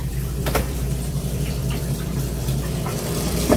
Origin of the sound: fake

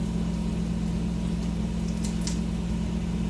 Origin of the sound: real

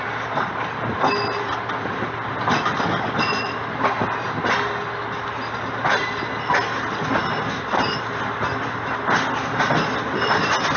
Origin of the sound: real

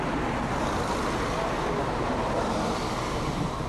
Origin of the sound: real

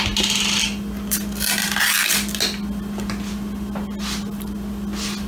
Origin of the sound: real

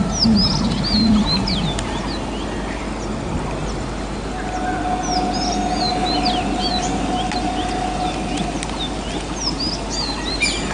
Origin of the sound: real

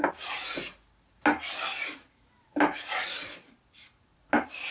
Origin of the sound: real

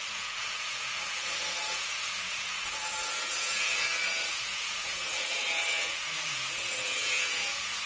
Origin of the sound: fake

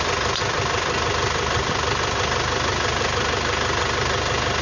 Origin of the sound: real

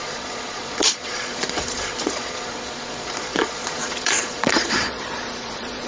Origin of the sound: fake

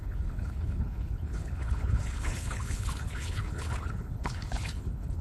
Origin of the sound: fake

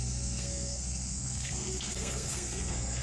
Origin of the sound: fake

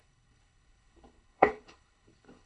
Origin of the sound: fake